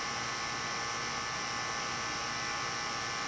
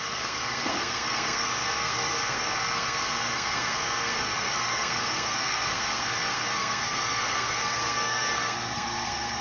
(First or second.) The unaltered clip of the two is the first